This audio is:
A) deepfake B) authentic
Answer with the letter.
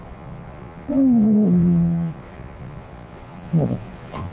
A